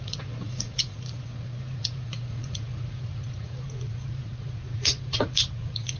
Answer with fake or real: fake